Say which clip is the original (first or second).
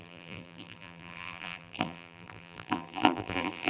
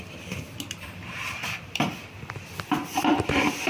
second